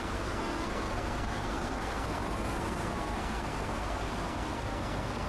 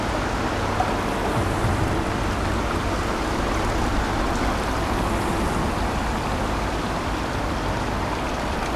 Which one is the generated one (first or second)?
first